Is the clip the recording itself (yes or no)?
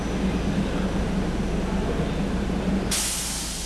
yes